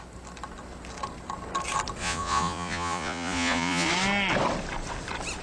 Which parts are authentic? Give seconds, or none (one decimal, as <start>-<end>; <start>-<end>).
0.0-2.0; 3.9-5.4